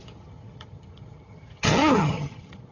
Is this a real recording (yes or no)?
no